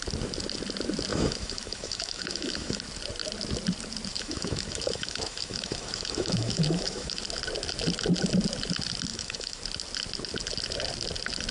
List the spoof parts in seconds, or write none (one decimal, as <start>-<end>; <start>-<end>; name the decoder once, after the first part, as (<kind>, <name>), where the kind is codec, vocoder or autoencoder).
1.1-2.8 (autoencoder, DAC-VAE); 4.1-7.2; 9.1-9.6